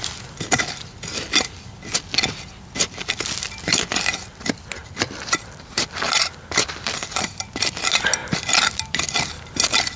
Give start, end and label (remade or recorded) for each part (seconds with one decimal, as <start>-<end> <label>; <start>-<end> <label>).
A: 0.0-4.8 recorded; 4.8-7.7 remade; 7.7-8.2 recorded; 8.2-9.3 remade; 9.3-10.0 recorded